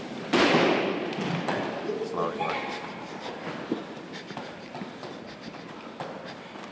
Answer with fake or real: real